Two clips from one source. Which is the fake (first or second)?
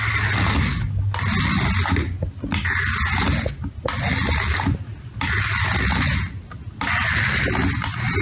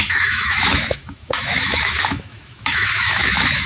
second